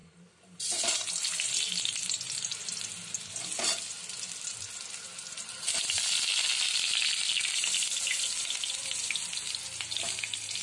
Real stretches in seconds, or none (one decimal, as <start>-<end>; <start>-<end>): 0.0-10.6

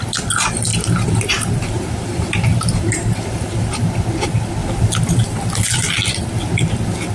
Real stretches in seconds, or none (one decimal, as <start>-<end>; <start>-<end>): 0.0-0.7; 3.7-7.1